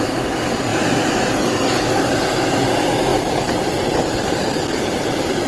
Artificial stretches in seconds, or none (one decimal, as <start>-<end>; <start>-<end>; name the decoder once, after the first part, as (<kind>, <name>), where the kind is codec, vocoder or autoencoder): none